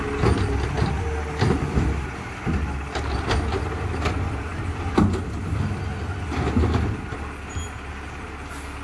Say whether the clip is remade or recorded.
recorded